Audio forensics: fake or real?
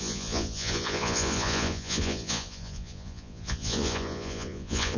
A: fake